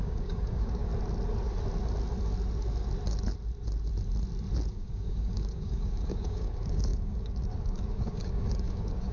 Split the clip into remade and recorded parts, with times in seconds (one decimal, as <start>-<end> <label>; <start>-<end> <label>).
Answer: 0.0-0.9 remade; 0.9-4.7 recorded; 4.7-9.1 remade